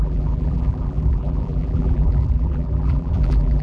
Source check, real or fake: fake